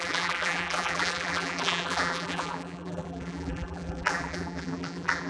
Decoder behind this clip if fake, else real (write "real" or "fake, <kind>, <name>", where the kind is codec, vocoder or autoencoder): fake, vocoder, BigVGAN v2